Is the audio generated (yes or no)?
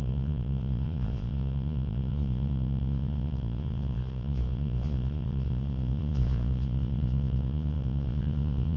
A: yes